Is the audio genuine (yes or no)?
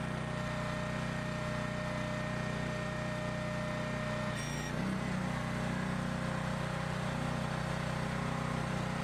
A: yes